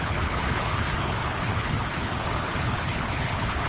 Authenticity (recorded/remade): remade